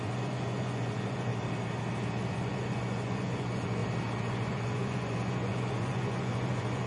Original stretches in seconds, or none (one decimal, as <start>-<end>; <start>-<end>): 1.3-2.3; 3.8-4.3